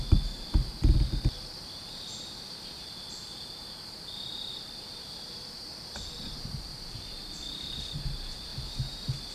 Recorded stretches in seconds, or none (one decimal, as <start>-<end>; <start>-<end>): 2.1-2.8; 8.5-9.3